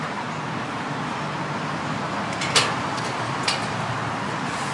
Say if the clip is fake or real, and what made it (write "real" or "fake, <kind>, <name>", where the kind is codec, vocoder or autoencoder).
real